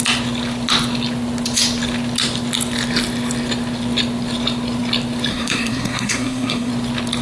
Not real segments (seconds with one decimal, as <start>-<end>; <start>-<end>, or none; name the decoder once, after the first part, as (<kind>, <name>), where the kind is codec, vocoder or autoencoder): 5.3-6.7 (codec, SNAC)